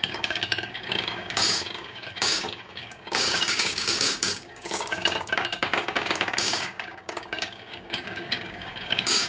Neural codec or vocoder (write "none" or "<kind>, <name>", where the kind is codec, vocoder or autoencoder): codec, DAC